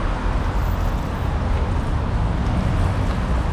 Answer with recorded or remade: recorded